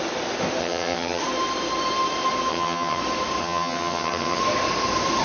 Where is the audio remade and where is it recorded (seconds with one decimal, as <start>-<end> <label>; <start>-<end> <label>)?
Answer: 0.0-0.6 recorded; 0.6-1.2 remade; 1.2-2.5 recorded; 2.5-3.0 remade; 3.0-3.4 recorded; 3.4-4.4 remade; 4.4-5.2 recorded